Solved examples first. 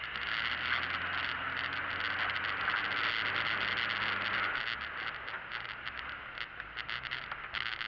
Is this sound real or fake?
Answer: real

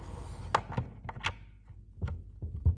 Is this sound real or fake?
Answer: real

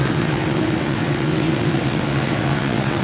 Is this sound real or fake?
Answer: fake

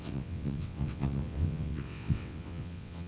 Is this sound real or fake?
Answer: fake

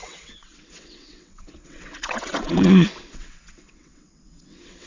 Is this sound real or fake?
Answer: fake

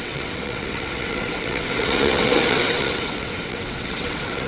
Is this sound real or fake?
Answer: fake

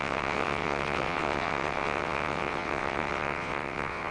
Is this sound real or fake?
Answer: fake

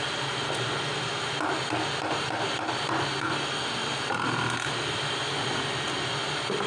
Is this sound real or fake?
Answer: real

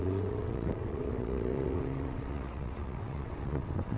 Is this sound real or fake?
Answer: fake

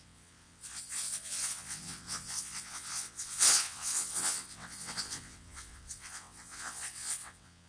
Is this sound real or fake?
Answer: fake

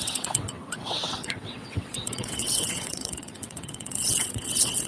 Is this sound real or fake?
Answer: fake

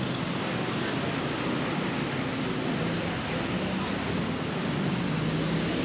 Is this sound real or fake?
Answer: real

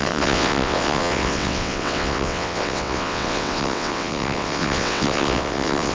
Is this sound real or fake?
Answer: fake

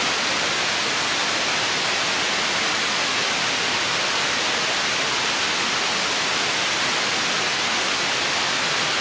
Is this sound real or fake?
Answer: real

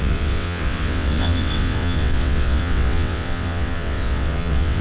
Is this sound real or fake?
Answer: fake